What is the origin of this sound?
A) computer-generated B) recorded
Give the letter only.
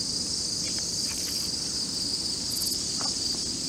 B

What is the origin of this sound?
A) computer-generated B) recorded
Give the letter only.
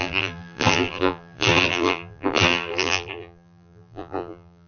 A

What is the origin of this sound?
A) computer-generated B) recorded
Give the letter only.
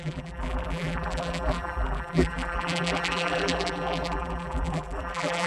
A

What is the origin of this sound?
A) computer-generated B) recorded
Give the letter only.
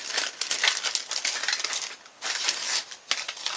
B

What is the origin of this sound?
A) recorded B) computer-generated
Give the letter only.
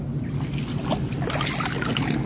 A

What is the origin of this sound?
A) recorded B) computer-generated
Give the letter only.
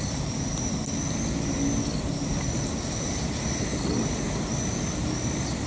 A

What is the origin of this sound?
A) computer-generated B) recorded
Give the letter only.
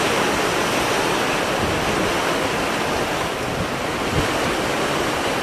B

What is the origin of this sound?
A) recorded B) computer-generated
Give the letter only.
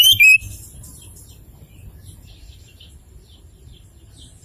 B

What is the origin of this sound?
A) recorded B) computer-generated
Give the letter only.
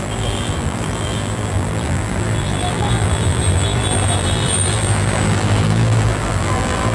B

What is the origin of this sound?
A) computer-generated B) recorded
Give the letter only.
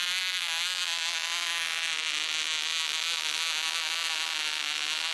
B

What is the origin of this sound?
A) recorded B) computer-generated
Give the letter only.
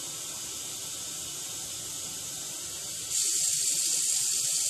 A